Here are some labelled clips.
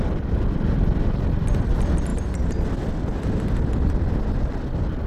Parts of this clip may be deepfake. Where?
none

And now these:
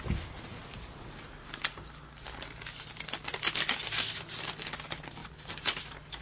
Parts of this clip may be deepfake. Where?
5.2-5.8 (vocoder, BigVGAN v2)

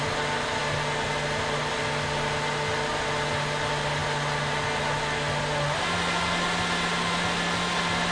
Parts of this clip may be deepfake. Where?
none

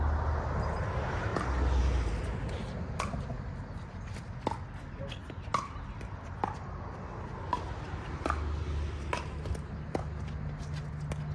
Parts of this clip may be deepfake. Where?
none

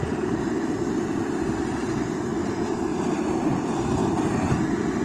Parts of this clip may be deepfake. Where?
0.0-1.1 (vocoder, BigVGAN v2)